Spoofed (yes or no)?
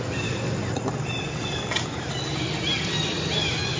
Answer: no